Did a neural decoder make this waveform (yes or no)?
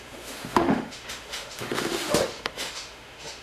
yes